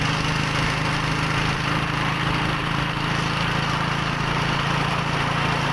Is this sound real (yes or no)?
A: yes